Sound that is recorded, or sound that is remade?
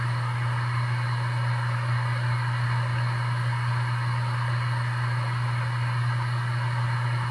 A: recorded